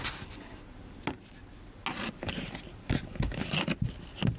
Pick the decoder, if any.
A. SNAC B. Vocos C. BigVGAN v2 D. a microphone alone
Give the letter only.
D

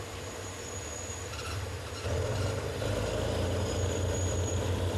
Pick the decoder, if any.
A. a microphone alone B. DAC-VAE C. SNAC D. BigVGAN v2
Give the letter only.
A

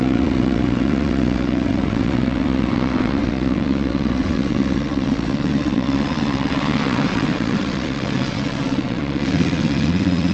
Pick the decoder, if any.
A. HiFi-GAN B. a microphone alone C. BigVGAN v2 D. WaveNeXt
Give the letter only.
D